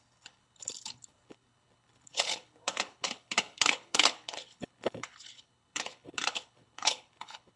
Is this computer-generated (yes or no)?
yes